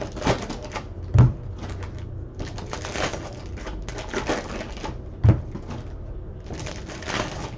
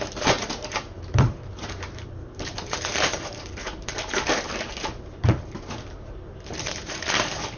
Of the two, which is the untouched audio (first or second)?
first